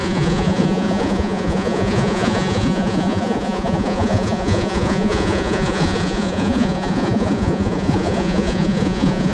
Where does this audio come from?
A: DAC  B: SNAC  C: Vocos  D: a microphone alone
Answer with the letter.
C